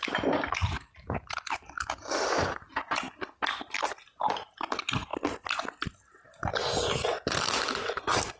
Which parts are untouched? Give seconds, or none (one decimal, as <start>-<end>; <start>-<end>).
0.0-8.4